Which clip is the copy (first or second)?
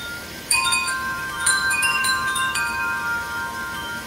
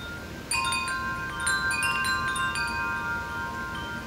first